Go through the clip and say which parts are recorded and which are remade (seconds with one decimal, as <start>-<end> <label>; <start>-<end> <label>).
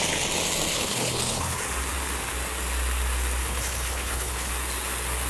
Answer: 0.0-0.7 recorded; 0.7-1.6 remade; 1.6-3.4 recorded; 3.4-4.5 remade; 4.5-5.3 recorded